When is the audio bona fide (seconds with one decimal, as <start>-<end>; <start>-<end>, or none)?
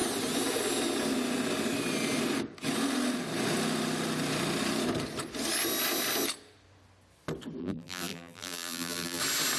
0.0-7.6; 9.2-9.6